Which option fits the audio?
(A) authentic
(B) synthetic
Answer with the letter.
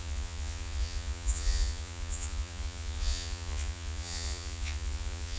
B